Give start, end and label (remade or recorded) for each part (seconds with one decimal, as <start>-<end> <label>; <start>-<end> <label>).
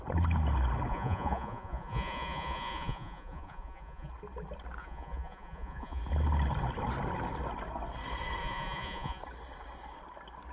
0.0-0.9 recorded; 0.9-4.1 remade; 4.1-4.8 recorded; 4.8-6.0 remade; 6.0-8.4 recorded; 8.4-9.2 remade; 9.2-10.5 recorded